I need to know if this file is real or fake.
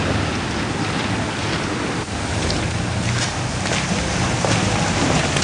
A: real